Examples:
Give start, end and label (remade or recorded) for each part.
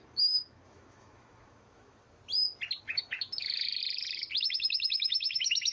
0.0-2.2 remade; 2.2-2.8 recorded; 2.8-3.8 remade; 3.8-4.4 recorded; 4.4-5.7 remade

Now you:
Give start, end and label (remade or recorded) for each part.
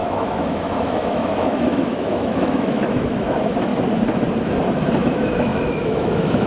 0.0-3.7 remade; 3.7-5.0 recorded; 5.0-6.5 remade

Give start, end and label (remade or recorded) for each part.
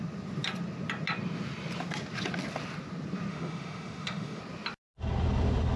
0.0-3.3 recorded; 3.3-4.4 remade; 4.4-5.8 recorded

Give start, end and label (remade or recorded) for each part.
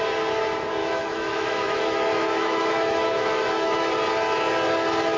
0.0-0.8 recorded; 0.8-3.9 remade; 3.9-5.2 recorded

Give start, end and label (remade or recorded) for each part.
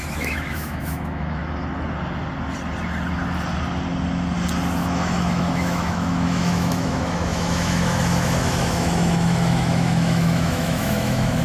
0.0-1.4 remade; 1.4-4.8 recorded; 4.8-11.4 remade